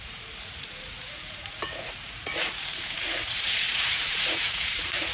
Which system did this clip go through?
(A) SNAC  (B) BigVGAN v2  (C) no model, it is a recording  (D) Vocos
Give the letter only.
D